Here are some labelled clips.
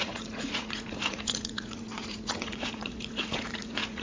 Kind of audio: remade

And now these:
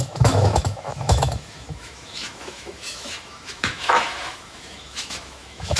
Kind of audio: remade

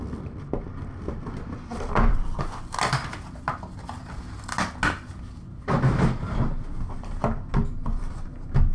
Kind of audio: recorded